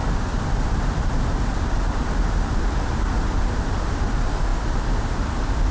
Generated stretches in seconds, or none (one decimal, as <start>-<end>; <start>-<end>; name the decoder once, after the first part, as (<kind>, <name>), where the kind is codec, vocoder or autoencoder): 3.4-5.7 (vocoder, BigVGAN v2)